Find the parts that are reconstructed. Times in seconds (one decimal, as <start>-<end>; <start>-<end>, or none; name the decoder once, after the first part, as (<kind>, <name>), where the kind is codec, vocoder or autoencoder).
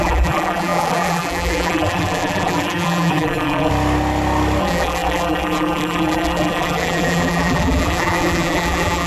0.0-3.7 (vocoder, BigVGAN v2); 4.6-9.1